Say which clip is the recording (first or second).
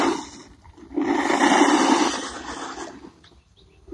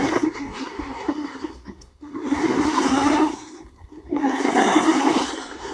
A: first